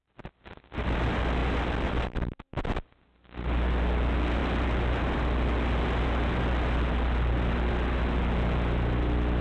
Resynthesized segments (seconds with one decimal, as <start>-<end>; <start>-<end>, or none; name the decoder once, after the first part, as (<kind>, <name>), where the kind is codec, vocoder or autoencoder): none